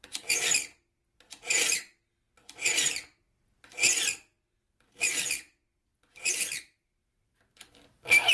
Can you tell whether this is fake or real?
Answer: real